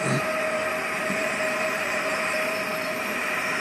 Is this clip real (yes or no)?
no